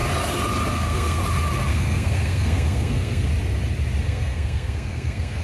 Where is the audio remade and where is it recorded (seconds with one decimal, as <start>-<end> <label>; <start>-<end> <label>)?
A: 0.0-0.7 recorded; 0.7-1.2 remade; 1.2-1.7 recorded; 1.7-3.3 remade; 3.3-4.0 recorded; 4.0-5.4 remade